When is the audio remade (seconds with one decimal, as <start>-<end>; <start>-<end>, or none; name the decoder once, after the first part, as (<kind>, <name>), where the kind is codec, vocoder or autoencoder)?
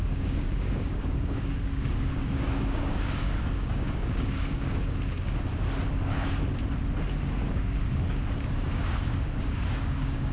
0.0-5.5 (codec, DAC); 7.5-10.3